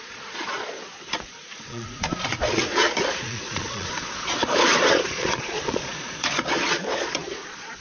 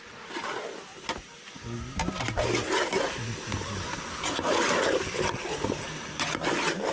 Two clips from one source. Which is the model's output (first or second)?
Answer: first